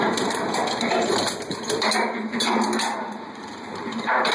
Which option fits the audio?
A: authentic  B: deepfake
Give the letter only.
B